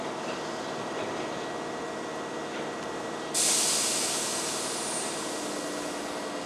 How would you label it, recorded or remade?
recorded